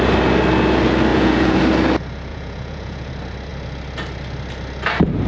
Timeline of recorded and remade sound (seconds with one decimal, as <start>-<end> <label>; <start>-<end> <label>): 0.0-1.1 recorded; 1.1-1.6 remade; 1.6-2.3 recorded; 2.3-3.1 remade; 3.1-5.3 recorded